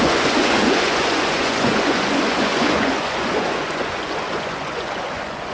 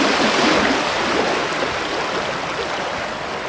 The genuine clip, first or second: second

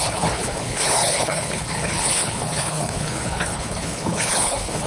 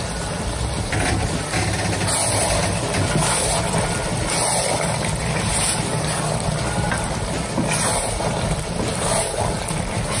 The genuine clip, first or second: second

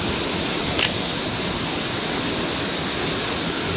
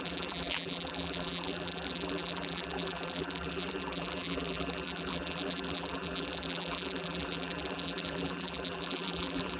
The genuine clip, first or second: first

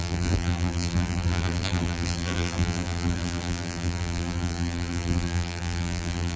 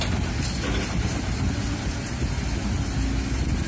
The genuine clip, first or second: second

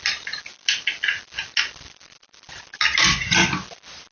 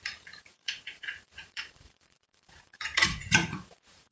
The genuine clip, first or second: first